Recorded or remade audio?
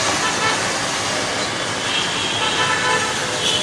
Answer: recorded